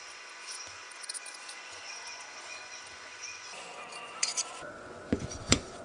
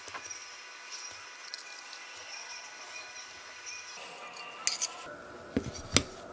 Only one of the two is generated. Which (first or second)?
first